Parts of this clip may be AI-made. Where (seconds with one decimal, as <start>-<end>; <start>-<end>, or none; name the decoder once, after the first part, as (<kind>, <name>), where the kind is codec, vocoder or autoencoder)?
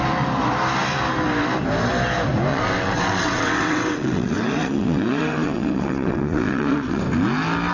2.5-7.0 (vocoder, WaveNeXt)